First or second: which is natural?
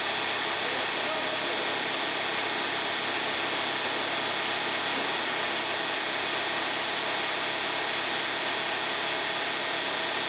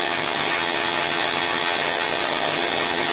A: first